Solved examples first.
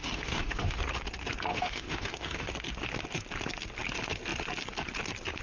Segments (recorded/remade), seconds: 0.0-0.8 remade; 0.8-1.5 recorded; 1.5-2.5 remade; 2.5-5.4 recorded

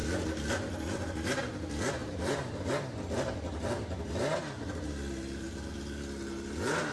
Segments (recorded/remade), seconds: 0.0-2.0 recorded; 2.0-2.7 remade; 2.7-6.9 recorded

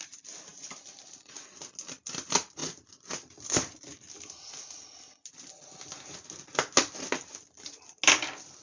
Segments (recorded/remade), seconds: 0.0-8.6 recorded

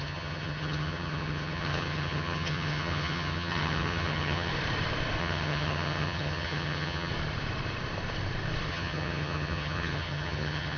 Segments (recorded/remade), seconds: 0.0-4.5 remade; 4.5-5.2 recorded; 5.2-7.1 remade; 7.1-8.7 recorded; 8.7-10.8 remade

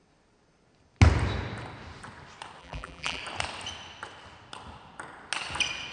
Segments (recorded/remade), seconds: 0.0-2.6 recorded; 2.6-3.2 remade; 3.2-5.9 recorded

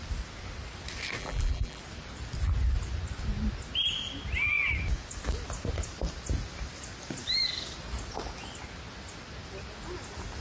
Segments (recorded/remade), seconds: 0.0-1.2 recorded; 1.2-1.8 remade; 1.8-10.4 recorded

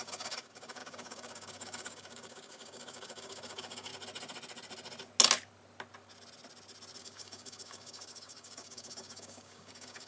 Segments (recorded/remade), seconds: 0.0-3.9 remade; 3.9-7.0 recorded; 7.0-10.1 remade

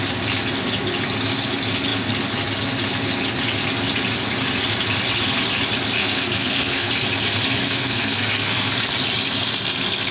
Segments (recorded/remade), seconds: 0.0-6.0 recorded; 6.0-6.9 remade; 6.9-7.6 recorded; 7.6-8.7 remade; 8.7-10.1 recorded